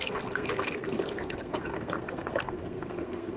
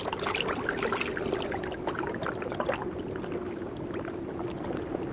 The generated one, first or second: first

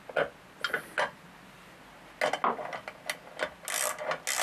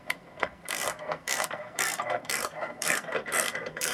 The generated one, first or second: second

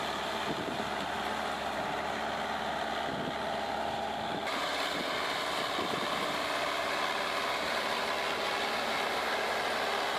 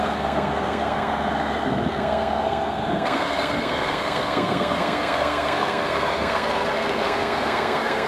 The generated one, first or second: second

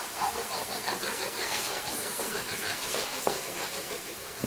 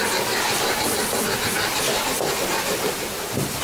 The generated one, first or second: first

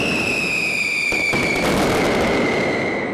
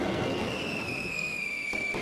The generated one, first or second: second